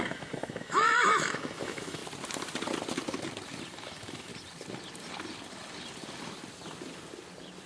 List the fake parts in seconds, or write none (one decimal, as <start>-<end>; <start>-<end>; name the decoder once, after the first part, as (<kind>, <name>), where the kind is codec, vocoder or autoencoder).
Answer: 0.0-2.0 (autoencoder, DAC-VAE); 3.7-4.3